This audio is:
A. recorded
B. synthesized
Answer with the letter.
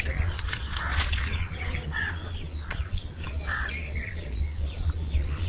B